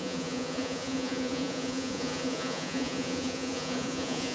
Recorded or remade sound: remade